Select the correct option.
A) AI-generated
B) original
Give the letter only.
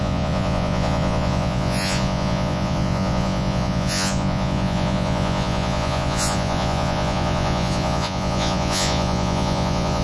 A